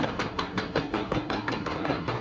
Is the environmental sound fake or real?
fake